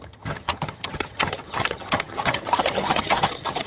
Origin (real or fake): fake